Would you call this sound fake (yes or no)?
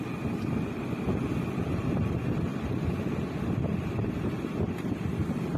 yes